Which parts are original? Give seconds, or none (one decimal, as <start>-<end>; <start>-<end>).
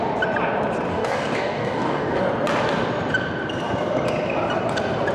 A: 0.0-0.9; 2.2-5.1